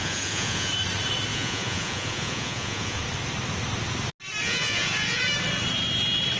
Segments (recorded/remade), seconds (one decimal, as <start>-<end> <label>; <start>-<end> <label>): 0.0-0.7 remade; 0.7-1.3 recorded; 1.3-3.0 remade; 3.0-4.4 recorded; 4.4-5.2 remade; 5.2-6.4 recorded